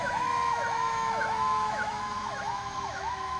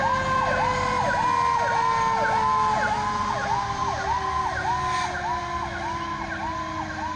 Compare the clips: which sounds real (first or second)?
second